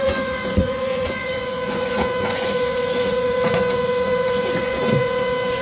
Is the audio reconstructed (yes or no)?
yes